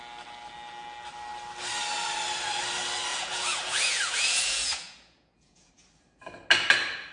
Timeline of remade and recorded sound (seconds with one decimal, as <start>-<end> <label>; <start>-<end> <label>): 0.0-3.1 recorded; 3.1-5.7 remade; 5.7-7.1 recorded